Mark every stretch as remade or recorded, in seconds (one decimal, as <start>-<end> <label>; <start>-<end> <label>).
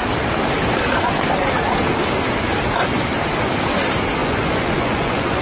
0.0-4.2 recorded; 4.2-5.4 remade